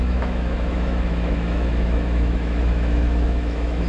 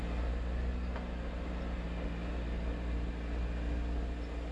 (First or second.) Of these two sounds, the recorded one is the second